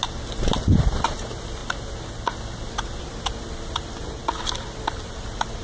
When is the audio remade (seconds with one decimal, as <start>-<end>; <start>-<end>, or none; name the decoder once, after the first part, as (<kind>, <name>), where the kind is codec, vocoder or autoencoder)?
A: 0.7-1.6 (vocoder, BigVGAN v2); 3.0-4.2; 5.0-5.6